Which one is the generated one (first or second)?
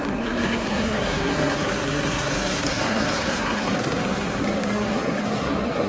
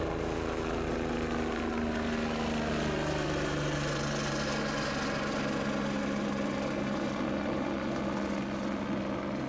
first